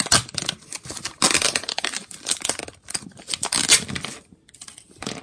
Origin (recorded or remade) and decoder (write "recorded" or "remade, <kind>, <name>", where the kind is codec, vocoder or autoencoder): recorded